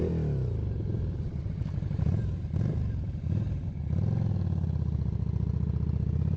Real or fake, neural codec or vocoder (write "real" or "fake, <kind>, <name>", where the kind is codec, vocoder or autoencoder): real